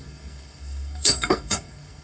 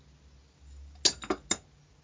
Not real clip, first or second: first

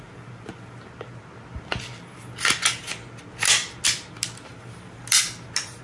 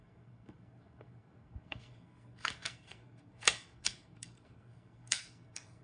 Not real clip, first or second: second